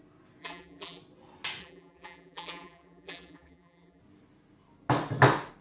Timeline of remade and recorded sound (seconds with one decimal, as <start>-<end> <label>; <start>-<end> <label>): 0.0-0.4 recorded; 0.4-1.0 remade; 1.0-1.6 recorded; 1.6-4.0 remade; 4.0-5.6 recorded